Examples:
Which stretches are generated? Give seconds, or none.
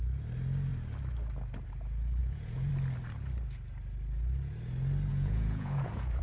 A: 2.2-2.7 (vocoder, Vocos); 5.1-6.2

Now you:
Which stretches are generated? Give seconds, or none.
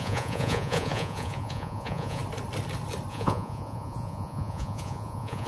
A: 0.0-2.2 (vocoder, Vocos); 3.1-5.5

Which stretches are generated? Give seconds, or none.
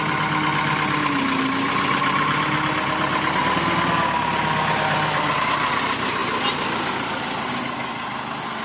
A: none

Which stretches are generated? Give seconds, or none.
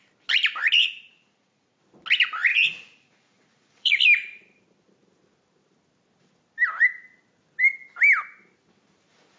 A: 0.8-1.8 (vocoder, Vocos); 2.5-4.0